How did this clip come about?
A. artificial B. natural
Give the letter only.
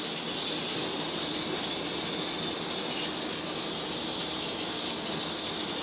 B